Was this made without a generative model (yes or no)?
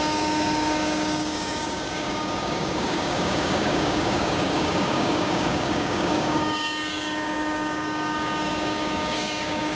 no